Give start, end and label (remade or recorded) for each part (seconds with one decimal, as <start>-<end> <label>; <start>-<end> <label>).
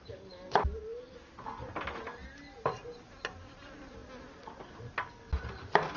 0.0-6.0 recorded